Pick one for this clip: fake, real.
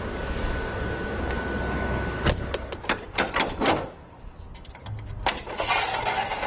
real